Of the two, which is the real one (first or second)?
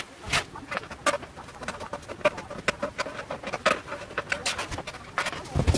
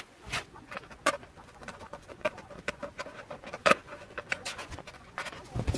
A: first